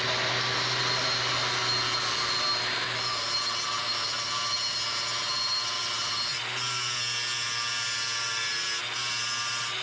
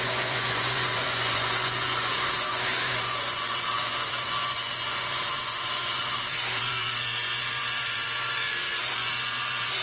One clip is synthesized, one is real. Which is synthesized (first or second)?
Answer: second